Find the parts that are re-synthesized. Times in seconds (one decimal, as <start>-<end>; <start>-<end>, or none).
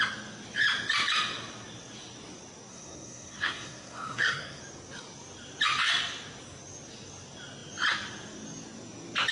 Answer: 2.7-4.6